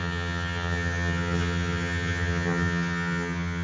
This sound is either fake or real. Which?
fake